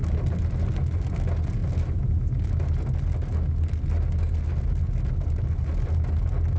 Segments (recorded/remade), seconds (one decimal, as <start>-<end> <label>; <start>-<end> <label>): 0.0-6.6 recorded